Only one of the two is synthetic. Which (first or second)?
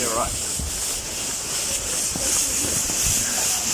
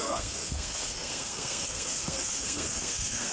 second